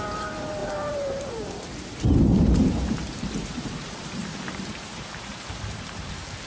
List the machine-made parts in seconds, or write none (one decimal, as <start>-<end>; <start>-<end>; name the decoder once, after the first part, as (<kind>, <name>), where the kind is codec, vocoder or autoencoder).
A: 0.6-1.5 (vocoder, BigVGAN v2); 2.3-6.1